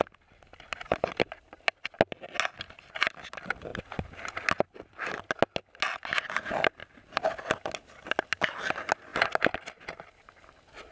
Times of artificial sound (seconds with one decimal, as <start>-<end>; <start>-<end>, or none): none